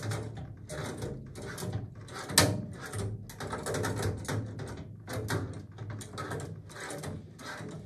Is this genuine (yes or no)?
yes